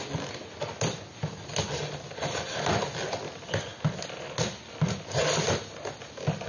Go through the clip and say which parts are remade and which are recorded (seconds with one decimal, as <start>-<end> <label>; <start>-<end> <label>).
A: 0.0-6.5 recorded